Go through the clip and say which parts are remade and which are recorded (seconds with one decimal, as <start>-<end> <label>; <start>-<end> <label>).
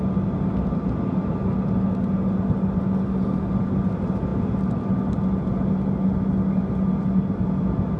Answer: 0.0-8.0 recorded